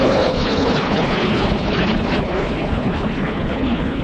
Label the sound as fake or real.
fake